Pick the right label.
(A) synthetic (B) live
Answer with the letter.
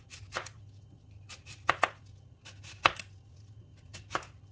B